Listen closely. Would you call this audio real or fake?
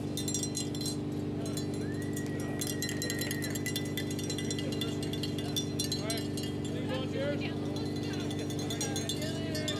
real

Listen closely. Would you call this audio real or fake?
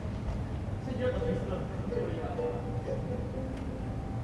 real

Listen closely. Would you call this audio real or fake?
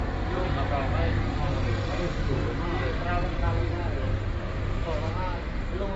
real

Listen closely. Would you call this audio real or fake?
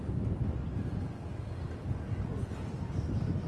real